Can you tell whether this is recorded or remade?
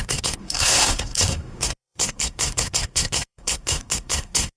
remade